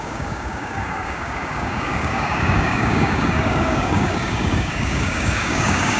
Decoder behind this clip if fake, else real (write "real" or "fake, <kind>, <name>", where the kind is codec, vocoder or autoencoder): fake, codec, DAC